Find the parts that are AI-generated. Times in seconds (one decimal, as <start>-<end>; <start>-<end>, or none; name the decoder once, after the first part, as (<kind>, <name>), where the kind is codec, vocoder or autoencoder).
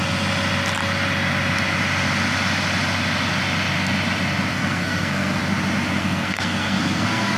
4.5-5.4 (codec, SNAC); 6.0-7.4